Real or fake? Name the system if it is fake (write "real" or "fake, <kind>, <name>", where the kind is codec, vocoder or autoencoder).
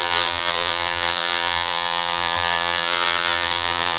fake, vocoder, BigVGAN v2